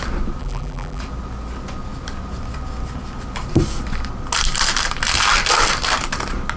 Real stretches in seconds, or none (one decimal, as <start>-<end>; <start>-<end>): 0.0-0.4; 1.0-6.6